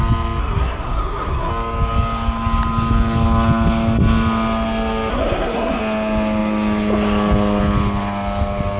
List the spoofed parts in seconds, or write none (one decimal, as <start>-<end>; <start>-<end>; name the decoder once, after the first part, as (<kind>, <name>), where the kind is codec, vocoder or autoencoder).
0.4-1.5 (codec, SNAC); 5.1-5.8